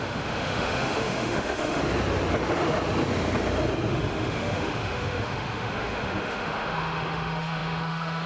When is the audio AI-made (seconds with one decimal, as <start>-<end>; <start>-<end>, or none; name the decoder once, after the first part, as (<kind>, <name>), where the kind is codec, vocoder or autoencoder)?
0.0-1.8 (autoencoder, DAC-VAE); 3.9-8.3